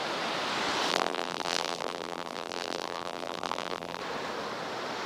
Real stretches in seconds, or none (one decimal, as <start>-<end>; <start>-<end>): 0.0-0.9; 4.0-5.1